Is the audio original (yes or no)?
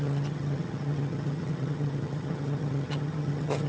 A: no